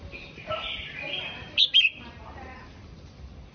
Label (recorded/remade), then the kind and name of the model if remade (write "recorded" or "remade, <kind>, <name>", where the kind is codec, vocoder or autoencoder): remade, vocoder, BigVGAN v2